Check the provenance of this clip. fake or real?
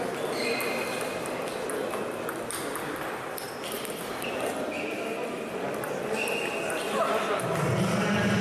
real